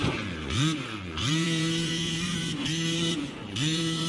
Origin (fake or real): fake